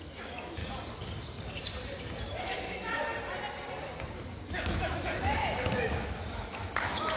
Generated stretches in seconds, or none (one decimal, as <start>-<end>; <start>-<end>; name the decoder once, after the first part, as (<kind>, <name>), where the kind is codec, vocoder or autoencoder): 0.0-0.6 (autoencoder, DAC-VAE); 2.4-3.1; 4.5-7.2